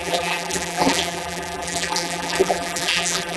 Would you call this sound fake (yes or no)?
yes